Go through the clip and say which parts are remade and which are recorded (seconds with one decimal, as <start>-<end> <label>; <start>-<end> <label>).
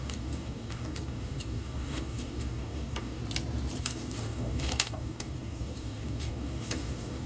0.0-3.2 remade; 3.2-3.8 recorded; 3.8-7.3 remade